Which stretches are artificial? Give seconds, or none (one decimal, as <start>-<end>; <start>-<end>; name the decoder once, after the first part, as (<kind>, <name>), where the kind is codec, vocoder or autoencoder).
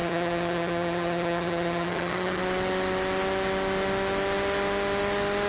0.0-2.4 (vocoder, HiFi-GAN)